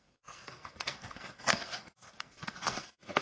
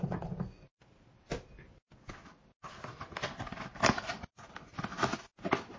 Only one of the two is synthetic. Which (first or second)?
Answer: first